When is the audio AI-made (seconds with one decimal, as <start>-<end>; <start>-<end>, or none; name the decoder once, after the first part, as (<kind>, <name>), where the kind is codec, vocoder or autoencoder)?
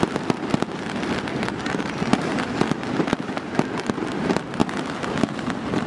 0.0-2.1 (vocoder, BigVGAN v2); 2.9-5.9